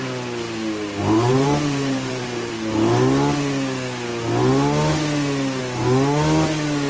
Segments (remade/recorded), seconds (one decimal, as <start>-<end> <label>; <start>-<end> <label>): 0.0-1.0 recorded; 1.0-2.5 remade; 2.5-6.9 recorded